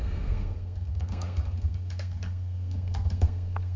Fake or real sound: fake